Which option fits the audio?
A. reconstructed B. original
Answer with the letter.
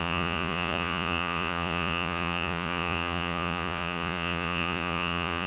A